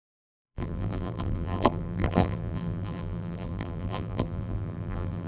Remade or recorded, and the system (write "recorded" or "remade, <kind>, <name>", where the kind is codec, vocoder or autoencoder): remade, vocoder, BigVGAN v2